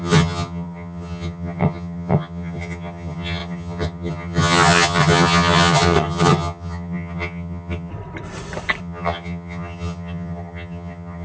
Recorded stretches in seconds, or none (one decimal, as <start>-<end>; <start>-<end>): 7.9-8.8